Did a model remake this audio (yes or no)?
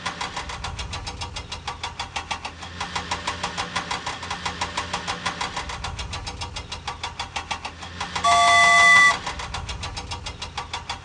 no